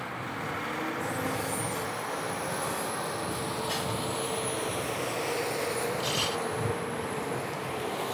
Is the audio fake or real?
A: real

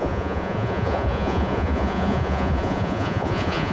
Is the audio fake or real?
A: fake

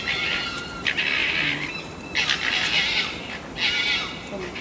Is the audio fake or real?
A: real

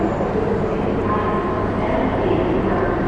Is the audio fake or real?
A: real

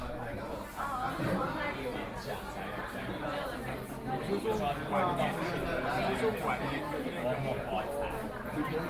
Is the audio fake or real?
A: real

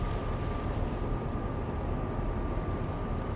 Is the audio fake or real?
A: real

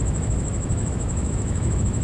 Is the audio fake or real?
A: fake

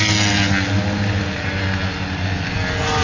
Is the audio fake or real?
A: real